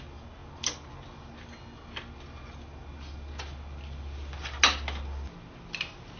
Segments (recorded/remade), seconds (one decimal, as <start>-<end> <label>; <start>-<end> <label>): 0.0-6.2 recorded